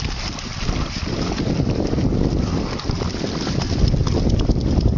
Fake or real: real